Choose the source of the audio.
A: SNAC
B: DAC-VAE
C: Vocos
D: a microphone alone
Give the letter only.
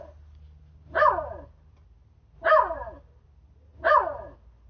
D